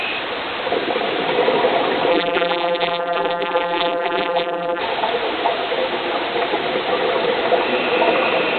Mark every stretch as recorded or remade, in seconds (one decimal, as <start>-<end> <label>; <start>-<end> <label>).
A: 0.0-2.1 recorded; 2.1-4.8 remade; 4.8-8.6 recorded